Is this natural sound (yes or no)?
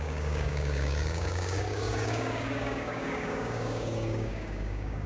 no